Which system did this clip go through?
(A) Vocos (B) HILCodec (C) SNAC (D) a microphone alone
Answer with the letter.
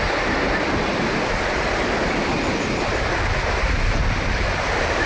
D